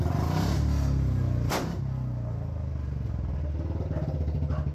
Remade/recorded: recorded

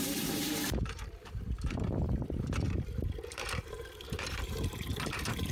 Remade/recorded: remade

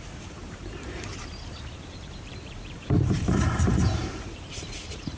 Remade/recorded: remade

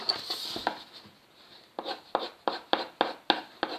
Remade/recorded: recorded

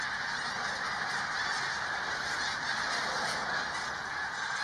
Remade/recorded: recorded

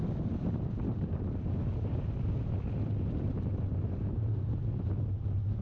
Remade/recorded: recorded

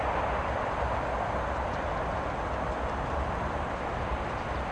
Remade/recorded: remade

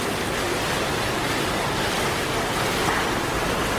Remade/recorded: recorded